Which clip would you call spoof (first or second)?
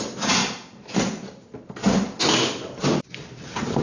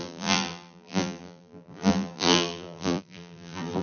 second